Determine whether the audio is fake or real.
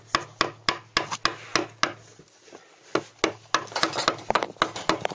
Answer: real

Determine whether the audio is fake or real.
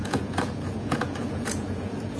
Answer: fake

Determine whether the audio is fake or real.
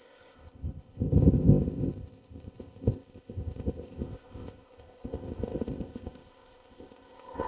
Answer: fake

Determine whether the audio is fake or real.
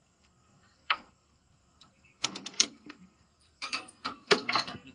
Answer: fake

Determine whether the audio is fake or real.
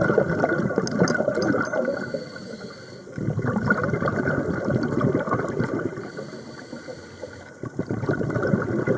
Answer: real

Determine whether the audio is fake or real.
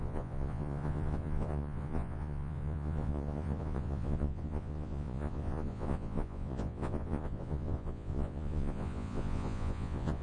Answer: fake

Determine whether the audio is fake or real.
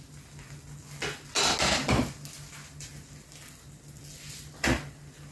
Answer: real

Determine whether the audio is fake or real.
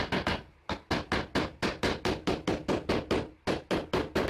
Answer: real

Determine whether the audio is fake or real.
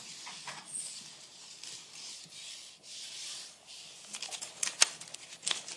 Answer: real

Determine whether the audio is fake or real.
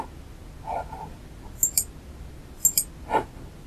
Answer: real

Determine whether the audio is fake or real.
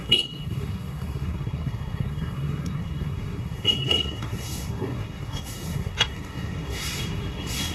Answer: fake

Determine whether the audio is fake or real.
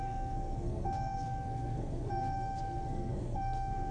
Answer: fake